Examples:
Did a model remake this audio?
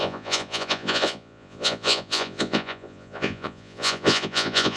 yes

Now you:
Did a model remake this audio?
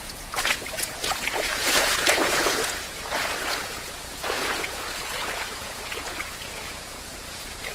yes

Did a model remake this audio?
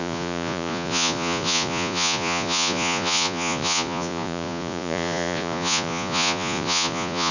yes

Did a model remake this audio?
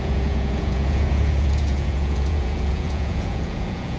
yes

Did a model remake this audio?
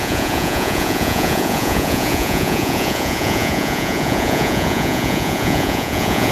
yes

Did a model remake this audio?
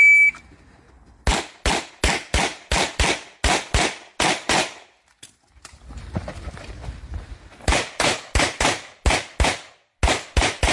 no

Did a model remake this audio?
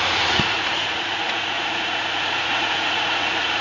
yes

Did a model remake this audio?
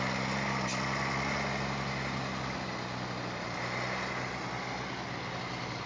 no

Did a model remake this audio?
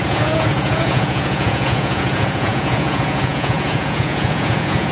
yes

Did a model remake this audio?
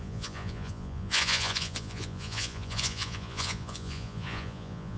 yes